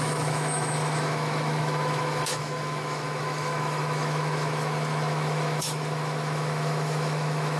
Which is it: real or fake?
fake